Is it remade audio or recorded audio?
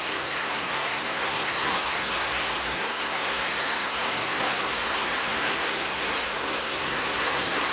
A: remade